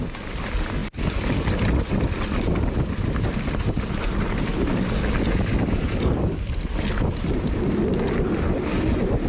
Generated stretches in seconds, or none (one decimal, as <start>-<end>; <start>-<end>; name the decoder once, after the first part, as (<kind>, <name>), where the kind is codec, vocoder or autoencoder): none